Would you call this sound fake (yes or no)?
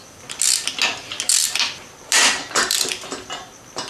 no